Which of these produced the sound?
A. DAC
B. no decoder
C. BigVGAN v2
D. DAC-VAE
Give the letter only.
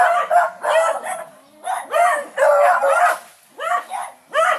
B